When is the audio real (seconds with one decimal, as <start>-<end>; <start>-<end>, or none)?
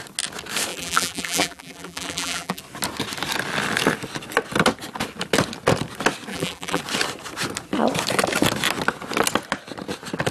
0.0-0.7; 2.6-6.3; 6.8-10.3